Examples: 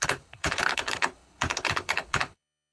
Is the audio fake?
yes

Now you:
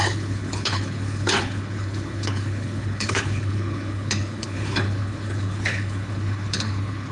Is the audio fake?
yes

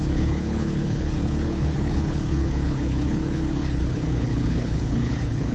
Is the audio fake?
yes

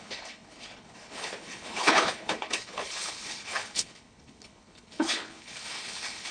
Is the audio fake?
yes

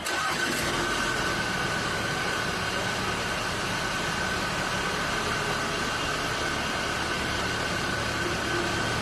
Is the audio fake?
no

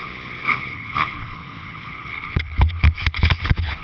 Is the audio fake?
yes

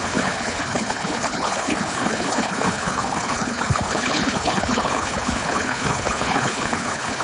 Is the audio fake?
yes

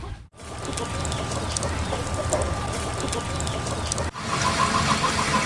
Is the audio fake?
no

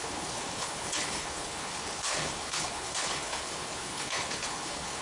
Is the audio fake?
yes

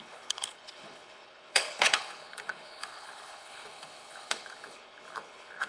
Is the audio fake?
yes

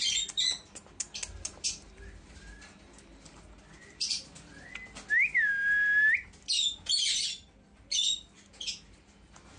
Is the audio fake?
no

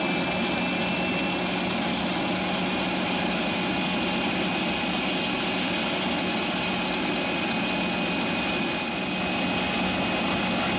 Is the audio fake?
no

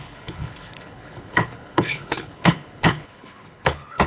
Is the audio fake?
yes